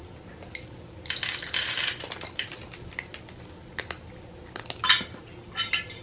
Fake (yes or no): no